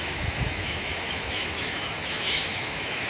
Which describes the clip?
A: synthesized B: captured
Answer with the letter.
A